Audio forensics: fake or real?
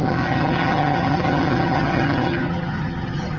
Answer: fake